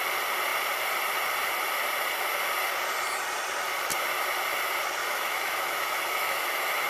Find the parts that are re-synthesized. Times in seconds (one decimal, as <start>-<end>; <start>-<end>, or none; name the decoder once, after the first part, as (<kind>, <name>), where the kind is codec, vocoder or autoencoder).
5.0-6.9 (autoencoder, DAC-VAE)